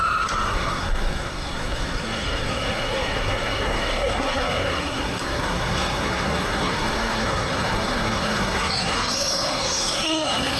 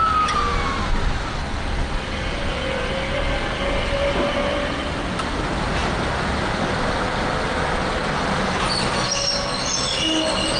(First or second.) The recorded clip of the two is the second